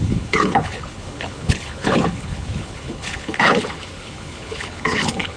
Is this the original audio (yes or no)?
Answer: no